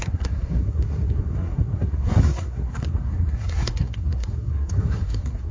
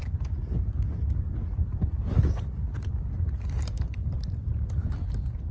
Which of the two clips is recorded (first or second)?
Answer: second